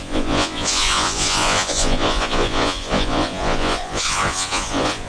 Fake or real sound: fake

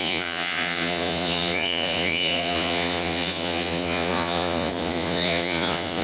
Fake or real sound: fake